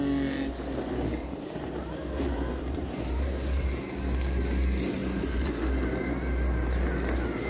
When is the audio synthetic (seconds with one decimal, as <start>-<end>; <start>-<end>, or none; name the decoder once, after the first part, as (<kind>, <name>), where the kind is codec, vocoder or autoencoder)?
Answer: 1.2-3.7 (vocoder, BigVGAN v2); 5.0-5.7